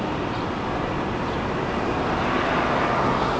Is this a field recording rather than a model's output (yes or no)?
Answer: yes